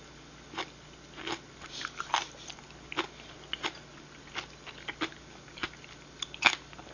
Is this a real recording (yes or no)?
yes